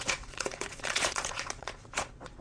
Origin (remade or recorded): remade